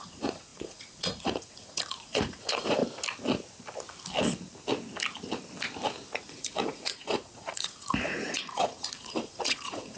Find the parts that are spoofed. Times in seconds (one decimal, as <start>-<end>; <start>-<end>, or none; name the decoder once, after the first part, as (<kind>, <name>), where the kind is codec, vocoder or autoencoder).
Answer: 0.0-2.8 (vocoder, Vocos); 6.2-10.0